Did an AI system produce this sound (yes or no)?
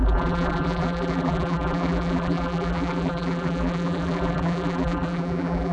yes